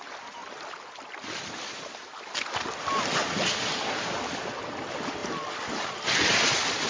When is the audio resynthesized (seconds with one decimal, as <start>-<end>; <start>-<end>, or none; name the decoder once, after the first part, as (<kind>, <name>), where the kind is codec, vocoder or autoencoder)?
none